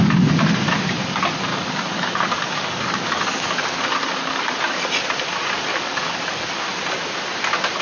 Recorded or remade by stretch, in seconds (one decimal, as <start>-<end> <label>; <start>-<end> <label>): 0.0-1.5 recorded; 1.5-4.5 remade; 4.5-5.7 recorded; 5.7-6.5 remade; 6.5-7.8 recorded